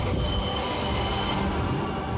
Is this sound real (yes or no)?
yes